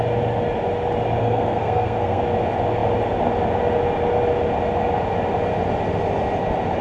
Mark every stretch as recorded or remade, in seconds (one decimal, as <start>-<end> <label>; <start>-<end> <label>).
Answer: 0.0-1.2 recorded; 1.2-2.2 remade; 2.2-6.8 recorded